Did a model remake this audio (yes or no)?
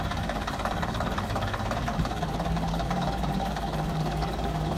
yes